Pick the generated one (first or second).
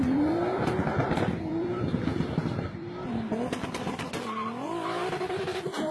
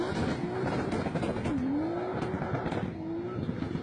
first